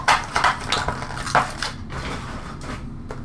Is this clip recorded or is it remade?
recorded